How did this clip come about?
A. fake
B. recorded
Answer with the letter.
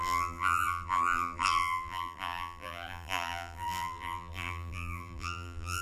A